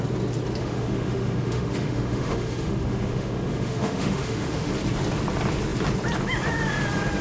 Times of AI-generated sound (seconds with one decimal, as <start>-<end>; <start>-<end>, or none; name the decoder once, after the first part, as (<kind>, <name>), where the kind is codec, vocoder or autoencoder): 0.6-4.7 (autoencoder, DAC-VAE)